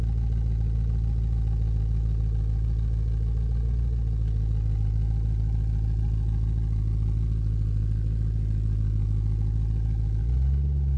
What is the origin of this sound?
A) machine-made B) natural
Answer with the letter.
B